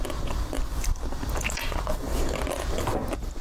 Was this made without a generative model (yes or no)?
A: yes